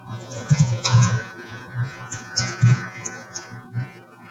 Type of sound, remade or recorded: remade